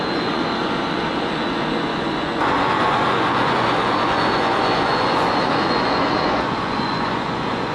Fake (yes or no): yes